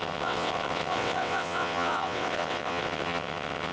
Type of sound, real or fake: fake